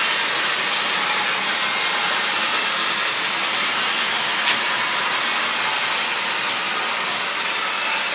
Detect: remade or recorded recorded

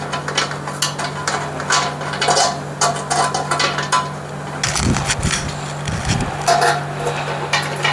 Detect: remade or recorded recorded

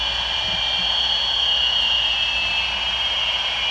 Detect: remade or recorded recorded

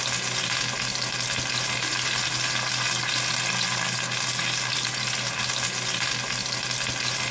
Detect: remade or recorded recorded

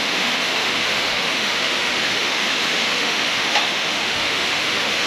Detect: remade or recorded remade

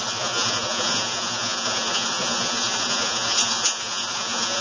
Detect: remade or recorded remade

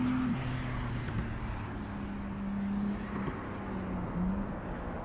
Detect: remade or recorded recorded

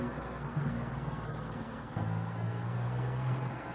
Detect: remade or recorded remade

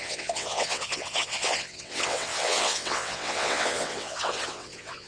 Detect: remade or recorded remade